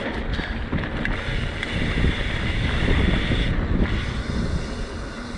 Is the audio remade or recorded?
recorded